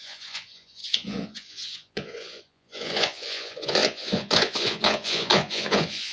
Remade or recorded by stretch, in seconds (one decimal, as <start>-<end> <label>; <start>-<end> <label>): 0.0-6.1 remade